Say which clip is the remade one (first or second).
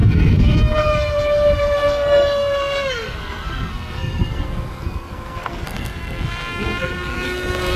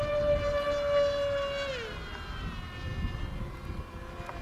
first